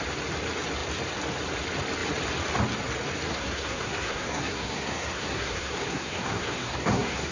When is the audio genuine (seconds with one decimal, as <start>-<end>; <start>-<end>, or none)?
0.0-3.3